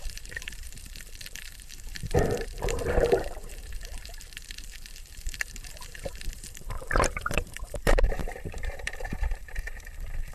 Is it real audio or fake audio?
fake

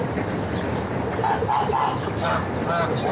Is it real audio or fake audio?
real